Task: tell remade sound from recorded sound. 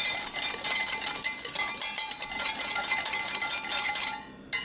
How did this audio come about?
recorded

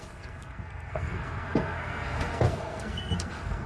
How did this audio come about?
remade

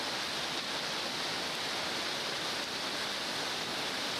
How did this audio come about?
recorded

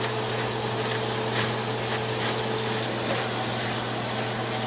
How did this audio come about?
recorded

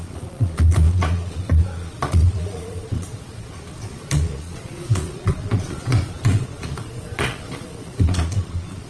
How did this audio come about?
remade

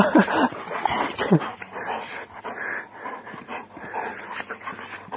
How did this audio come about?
recorded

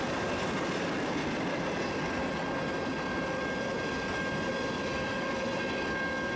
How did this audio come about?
recorded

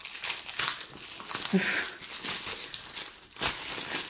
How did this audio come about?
recorded